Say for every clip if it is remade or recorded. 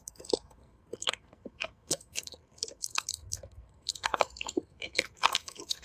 remade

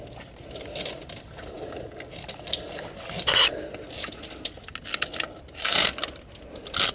recorded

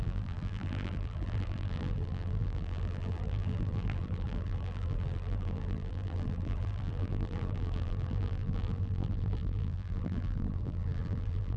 remade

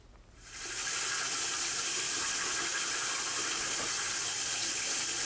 recorded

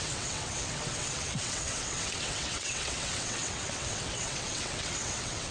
remade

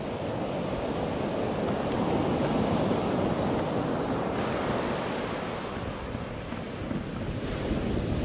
recorded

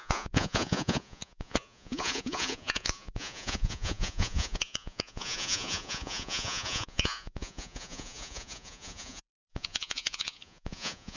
remade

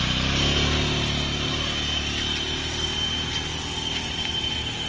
recorded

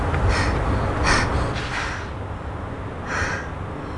recorded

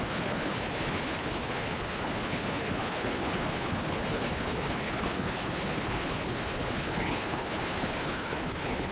remade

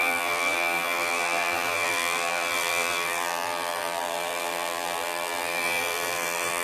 remade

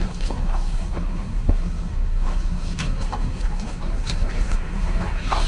remade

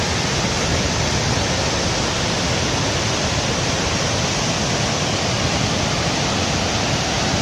recorded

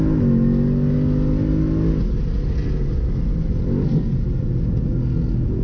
recorded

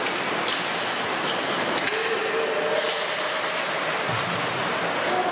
recorded